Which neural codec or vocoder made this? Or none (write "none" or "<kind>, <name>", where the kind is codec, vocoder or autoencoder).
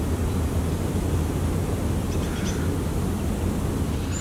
none